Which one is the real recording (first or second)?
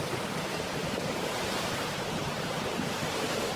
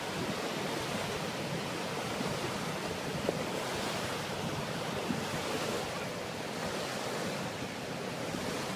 second